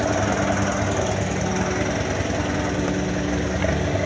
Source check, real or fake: real